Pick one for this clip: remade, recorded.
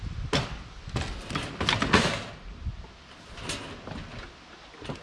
recorded